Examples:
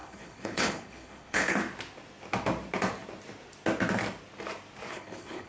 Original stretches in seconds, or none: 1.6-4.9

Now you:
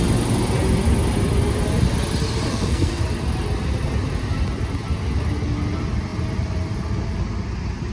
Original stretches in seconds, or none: 0.0-2.5; 3.0-7.9

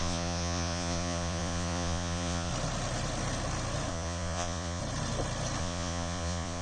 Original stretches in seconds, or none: 2.5-3.9; 4.8-5.6

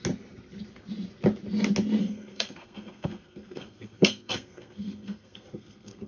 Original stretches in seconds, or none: 0.0-2.0